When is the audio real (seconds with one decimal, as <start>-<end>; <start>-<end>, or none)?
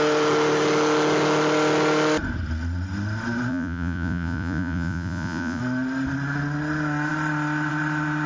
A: 0.0-3.5; 5.6-8.3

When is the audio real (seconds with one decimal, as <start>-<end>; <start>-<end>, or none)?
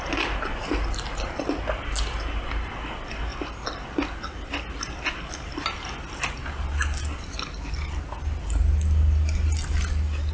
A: 0.0-10.3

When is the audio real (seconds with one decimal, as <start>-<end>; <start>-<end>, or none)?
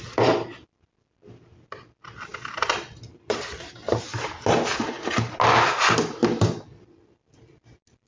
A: 0.0-8.1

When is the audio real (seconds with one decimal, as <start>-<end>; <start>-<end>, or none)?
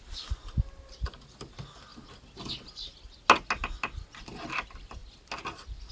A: 0.0-5.9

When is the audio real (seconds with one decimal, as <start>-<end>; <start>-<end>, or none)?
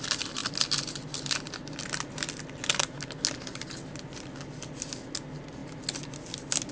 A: 0.0-6.7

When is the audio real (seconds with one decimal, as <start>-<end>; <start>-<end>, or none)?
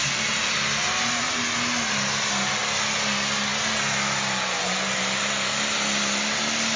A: 0.0-6.8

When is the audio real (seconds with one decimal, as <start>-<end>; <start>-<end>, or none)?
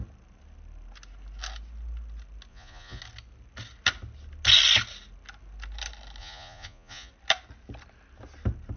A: 0.0-2.5; 3.0-6.2; 7.1-8.8